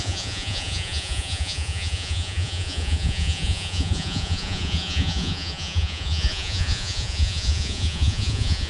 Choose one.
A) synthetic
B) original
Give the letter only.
A